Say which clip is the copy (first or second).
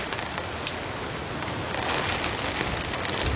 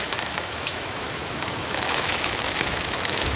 second